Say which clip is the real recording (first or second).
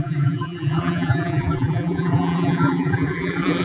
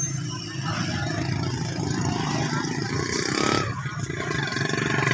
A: second